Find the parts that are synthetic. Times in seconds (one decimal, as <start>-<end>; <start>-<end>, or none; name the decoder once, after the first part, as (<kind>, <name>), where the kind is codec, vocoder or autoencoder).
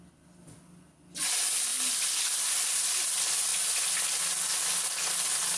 none